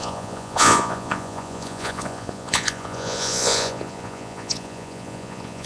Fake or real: fake